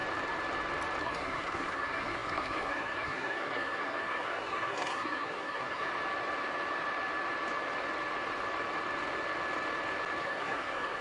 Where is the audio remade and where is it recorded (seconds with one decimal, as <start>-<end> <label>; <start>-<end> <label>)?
0.0-1.0 recorded; 1.0-5.9 remade; 5.9-10.2 recorded; 10.2-11.0 remade